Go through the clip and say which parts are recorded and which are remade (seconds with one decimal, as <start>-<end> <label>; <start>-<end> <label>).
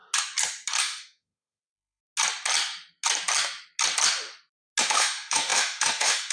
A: 0.0-0.8 recorded; 0.8-2.0 remade; 2.0-4.8 recorded; 4.8-6.3 remade